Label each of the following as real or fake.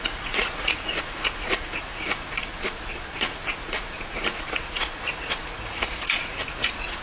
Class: fake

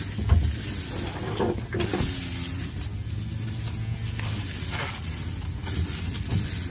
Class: real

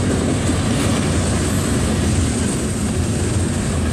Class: real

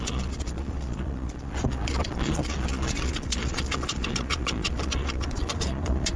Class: fake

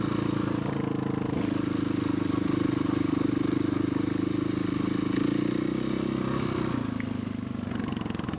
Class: real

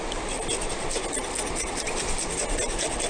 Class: real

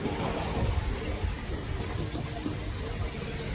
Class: real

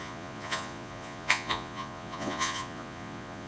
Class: fake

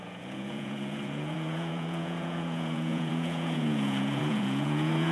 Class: fake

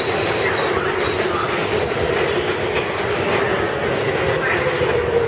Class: real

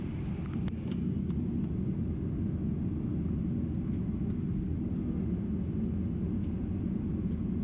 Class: real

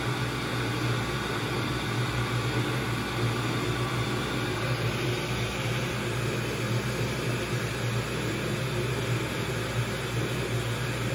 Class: real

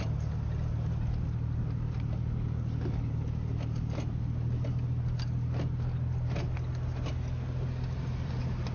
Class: real